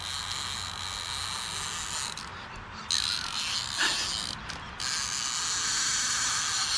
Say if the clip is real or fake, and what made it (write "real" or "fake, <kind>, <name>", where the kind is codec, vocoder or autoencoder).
real